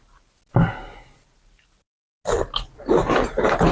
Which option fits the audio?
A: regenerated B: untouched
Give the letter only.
B